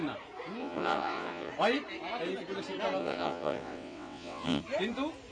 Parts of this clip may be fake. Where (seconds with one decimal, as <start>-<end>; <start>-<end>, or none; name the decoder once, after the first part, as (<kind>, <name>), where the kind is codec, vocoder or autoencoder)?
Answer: 0.6-1.5 (vocoder, WaveNeXt); 3.0-4.6